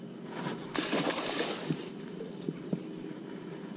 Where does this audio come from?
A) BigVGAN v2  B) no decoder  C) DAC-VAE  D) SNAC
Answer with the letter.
A